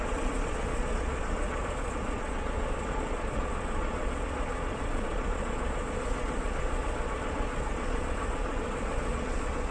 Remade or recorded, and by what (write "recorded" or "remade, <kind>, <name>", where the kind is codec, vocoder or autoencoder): remade, vocoder, Vocos